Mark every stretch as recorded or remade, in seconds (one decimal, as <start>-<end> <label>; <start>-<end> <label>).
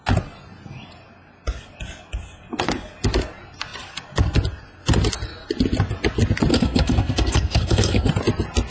0.0-6.5 recorded; 6.5-8.1 remade; 8.1-8.7 recorded